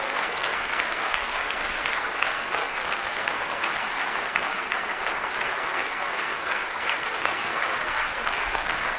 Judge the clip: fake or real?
fake